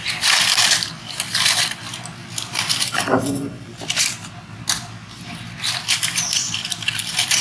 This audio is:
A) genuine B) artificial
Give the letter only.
A